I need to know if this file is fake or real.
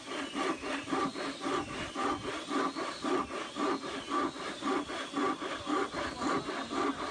real